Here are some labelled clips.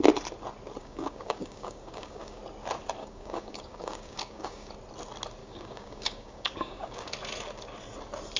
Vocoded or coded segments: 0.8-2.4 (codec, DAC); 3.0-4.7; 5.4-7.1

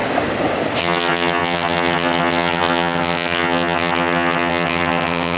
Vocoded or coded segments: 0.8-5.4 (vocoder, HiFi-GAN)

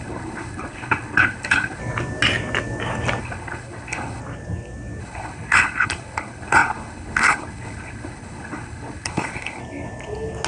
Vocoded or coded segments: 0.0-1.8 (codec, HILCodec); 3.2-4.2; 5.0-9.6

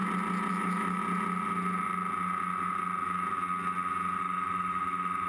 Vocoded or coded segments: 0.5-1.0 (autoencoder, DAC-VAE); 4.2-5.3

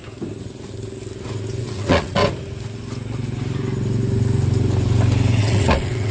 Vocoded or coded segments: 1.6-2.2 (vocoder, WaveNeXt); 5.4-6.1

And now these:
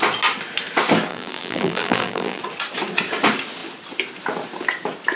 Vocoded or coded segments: 1.1-2.4 (vocoder, BigVGAN v2)

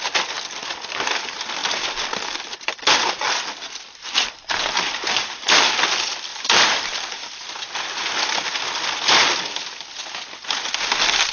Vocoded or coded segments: 4.0-5.5 (vocoder, BigVGAN v2); 6.3-7.5